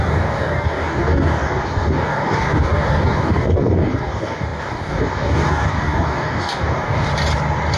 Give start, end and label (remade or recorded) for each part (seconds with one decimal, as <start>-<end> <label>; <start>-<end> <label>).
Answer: 0.0-7.1 remade; 7.1-7.8 recorded